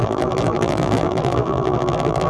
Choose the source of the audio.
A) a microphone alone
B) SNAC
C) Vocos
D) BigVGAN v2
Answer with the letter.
D